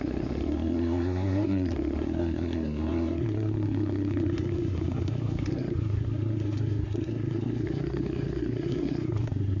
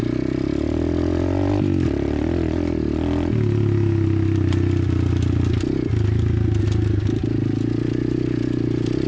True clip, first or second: second